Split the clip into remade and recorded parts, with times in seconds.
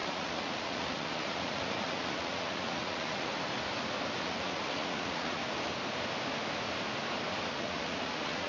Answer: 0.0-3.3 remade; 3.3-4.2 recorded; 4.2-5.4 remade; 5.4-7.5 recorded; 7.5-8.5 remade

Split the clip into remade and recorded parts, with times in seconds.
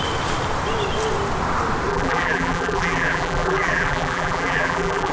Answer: 0.0-1.9 recorded; 1.9-5.1 remade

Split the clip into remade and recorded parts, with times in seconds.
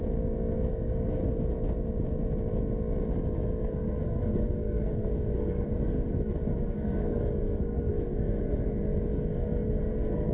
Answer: 0.0-0.7 recorded; 0.7-1.2 remade; 1.2-3.6 recorded; 3.6-10.3 remade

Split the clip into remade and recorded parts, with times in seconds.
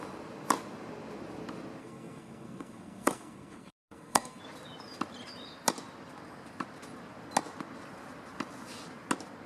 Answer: 0.0-1.8 recorded; 1.8-4.4 remade; 4.4-9.5 recorded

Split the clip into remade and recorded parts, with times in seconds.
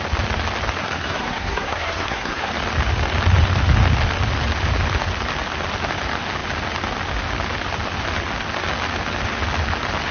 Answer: 0.0-0.8 recorded; 0.8-2.5 remade; 2.5-10.1 recorded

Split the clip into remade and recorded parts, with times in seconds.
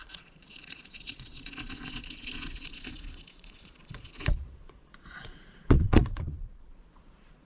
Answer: 0.0-7.5 remade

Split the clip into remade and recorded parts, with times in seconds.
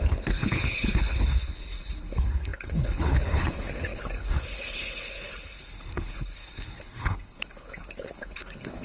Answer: 0.0-8.8 remade